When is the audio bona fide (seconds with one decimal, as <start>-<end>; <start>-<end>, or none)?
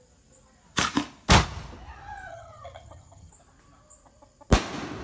0.0-2.3; 3.3-5.0